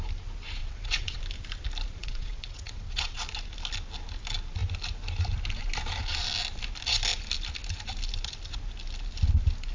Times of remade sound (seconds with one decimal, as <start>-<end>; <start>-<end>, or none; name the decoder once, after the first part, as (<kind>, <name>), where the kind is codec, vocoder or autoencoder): 0.6-1.2 (vocoder, WaveNeXt); 2.0-3.2